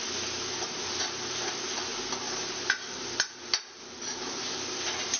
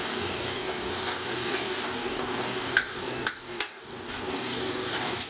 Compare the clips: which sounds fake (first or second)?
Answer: second